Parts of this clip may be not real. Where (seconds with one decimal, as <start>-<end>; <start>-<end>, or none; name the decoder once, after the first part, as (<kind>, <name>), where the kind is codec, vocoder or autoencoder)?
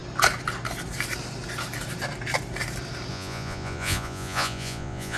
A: 3.1-5.2 (vocoder, Vocos)